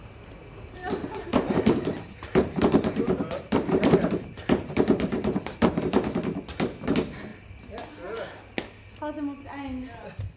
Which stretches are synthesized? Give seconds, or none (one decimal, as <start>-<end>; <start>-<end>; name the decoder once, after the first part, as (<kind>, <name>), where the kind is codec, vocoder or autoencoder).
0.8-5.7 (vocoder, BigVGAN v2)